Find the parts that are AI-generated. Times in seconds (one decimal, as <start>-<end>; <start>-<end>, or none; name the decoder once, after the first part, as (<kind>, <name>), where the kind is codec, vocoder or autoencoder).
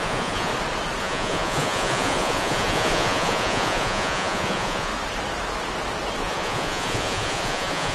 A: 0.0-0.5 (vocoder, Vocos); 1.0-4.9; 6.2-7.9